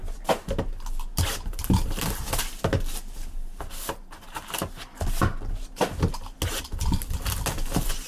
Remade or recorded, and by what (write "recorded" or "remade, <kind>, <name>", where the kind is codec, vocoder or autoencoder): recorded